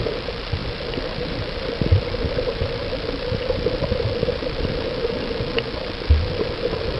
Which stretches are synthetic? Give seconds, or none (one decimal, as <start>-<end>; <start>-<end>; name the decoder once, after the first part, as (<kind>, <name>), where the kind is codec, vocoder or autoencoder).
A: 0.6-4.7 (vocoder, BigVGAN v2)